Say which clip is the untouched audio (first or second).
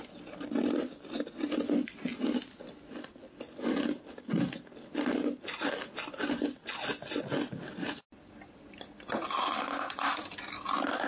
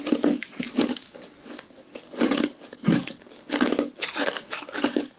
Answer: first